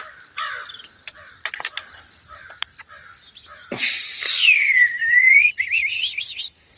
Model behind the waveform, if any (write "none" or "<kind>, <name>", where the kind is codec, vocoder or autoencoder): none